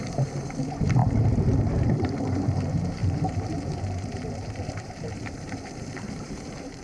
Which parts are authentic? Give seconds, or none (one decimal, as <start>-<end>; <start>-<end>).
none